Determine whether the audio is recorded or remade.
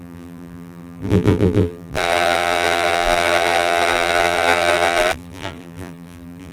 remade